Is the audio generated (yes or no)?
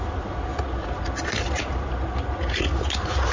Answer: no